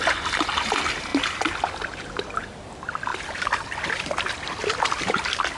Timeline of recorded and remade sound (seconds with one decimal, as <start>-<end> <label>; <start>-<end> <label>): 0.0-5.6 recorded